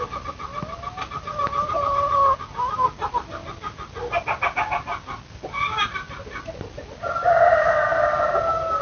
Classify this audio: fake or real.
real